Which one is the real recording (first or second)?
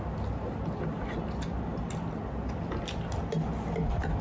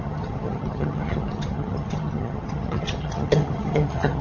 first